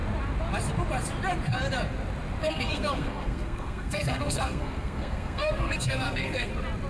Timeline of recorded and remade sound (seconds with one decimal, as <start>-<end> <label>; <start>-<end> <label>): 0.0-2.4 recorded; 2.4-6.5 remade; 6.5-6.9 recorded